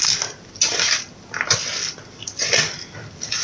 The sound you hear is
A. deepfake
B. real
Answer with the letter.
B